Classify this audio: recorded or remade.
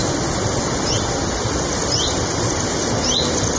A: recorded